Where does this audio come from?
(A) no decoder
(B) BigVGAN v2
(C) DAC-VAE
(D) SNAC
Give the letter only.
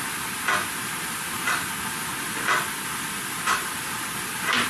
A